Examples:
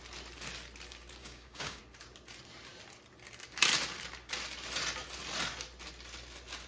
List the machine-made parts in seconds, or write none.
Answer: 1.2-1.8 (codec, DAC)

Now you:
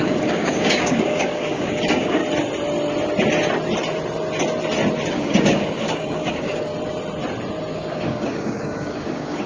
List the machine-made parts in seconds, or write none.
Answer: 0.0-2.2 (codec, DAC); 5.1-6.7; 7.7-9.5

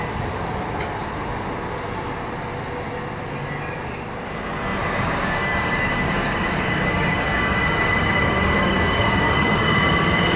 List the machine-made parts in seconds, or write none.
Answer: 4.8-9.9 (codec, DAC)